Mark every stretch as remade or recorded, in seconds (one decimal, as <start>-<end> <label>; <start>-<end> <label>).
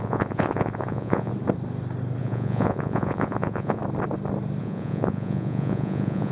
0.0-1.3 remade; 1.3-2.2 recorded; 2.2-3.8 remade; 3.8-4.6 recorded; 4.6-6.3 remade